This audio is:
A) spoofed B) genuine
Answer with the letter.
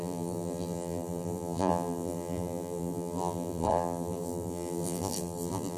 A